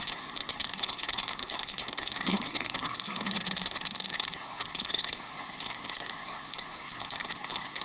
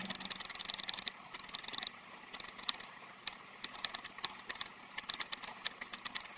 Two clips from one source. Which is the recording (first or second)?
second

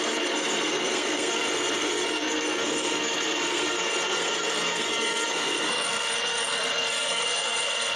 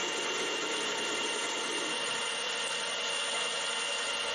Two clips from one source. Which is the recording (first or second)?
second